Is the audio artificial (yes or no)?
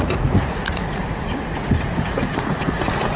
yes